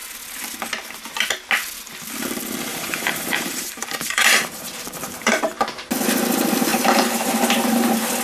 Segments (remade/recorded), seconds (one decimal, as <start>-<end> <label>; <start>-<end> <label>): 0.0-2.7 recorded; 2.7-5.9 remade; 5.9-6.7 recorded; 6.7-7.3 remade; 7.3-8.2 recorded